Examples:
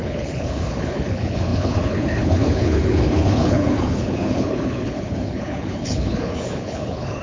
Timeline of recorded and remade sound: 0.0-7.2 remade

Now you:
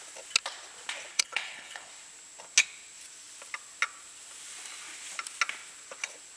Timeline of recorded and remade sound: 0.0-1.1 recorded; 1.1-1.9 remade; 1.9-6.4 recorded

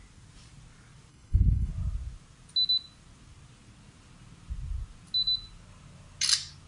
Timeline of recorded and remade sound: 0.0-1.1 recorded; 1.1-1.7 remade; 1.7-6.7 recorded

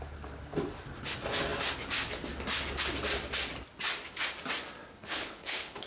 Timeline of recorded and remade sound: 0.0-5.0 recorded; 5.0-5.9 remade

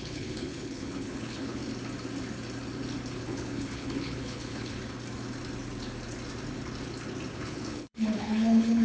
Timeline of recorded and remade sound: 0.0-1.6 remade; 1.6-3.2 recorded; 3.2-4.8 remade; 4.8-7.3 recorded; 7.3-8.8 remade

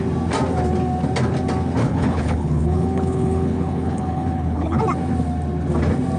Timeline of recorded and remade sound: 0.0-1.8 recorded; 1.8-4.8 remade; 4.8-6.2 recorded

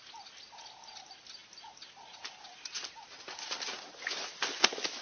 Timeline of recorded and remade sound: 0.0-5.0 recorded